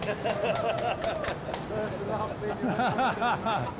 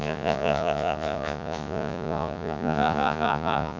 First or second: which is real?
first